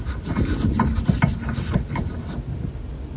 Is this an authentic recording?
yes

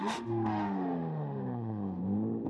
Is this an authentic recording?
no